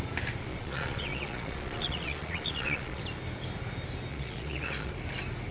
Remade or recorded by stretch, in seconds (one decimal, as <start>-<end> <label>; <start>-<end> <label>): 0.0-0.5 recorded; 0.5-3.0 remade; 3.0-4.1 recorded; 4.1-4.9 remade; 4.9-5.5 recorded